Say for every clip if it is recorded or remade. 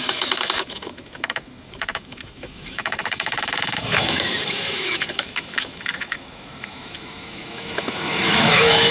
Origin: remade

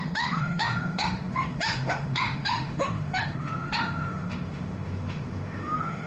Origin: remade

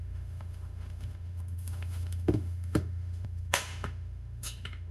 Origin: remade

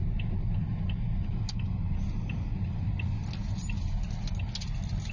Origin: recorded